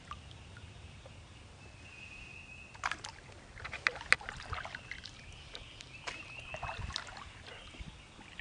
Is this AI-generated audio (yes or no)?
no